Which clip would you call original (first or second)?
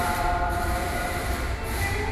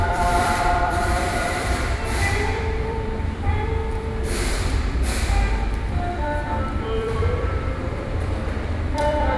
first